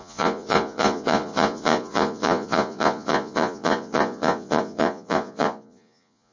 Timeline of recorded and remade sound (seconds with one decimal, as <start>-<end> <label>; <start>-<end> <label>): 0.0-6.3 remade